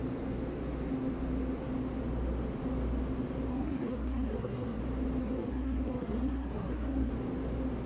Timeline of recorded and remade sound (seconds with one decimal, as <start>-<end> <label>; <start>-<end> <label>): 0.0-3.5 recorded; 3.5-4.8 remade; 4.8-5.2 recorded; 5.2-7.1 remade; 7.1-7.9 recorded